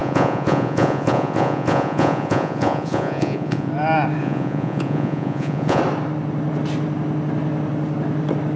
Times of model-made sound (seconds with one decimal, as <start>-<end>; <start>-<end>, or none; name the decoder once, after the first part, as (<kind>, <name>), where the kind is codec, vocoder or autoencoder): 0.0-3.7 (vocoder, Vocos); 4.2-5.8